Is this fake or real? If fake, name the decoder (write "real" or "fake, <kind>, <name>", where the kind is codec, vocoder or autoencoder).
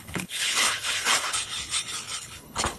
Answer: fake, codec, HILCodec